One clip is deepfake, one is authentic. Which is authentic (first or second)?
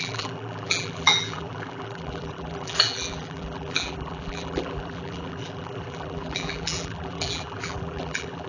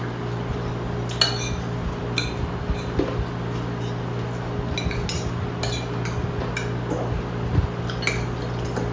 second